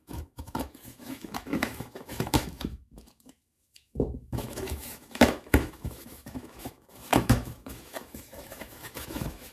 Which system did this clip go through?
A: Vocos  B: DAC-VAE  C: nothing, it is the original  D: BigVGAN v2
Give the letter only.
B